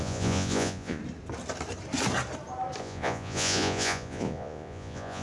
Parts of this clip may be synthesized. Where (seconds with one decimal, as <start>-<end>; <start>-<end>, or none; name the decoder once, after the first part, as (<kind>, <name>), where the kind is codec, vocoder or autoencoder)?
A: 0.0-1.0 (vocoder, Vocos); 2.8-5.2